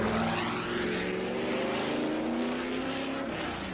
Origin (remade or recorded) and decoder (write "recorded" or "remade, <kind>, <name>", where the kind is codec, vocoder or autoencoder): recorded